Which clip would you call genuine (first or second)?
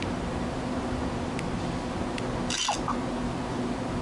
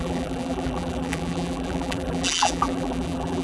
first